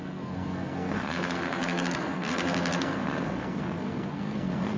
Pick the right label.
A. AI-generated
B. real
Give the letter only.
A